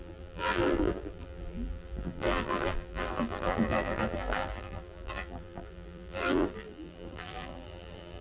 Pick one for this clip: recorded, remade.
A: remade